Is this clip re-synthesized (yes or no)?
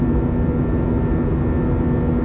no